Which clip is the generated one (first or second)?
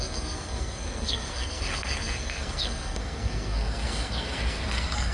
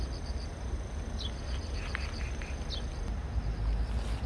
first